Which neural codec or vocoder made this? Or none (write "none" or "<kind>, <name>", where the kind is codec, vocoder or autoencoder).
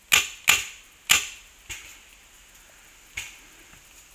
none